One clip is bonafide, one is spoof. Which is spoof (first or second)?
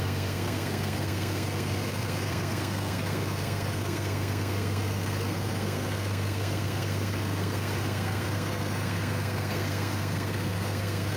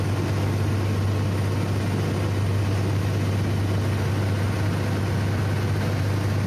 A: first